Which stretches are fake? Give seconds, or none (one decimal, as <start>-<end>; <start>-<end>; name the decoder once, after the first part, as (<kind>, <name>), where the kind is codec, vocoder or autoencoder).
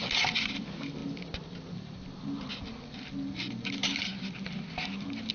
none